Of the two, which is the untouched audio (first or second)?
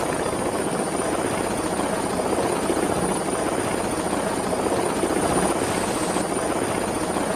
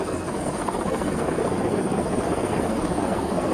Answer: first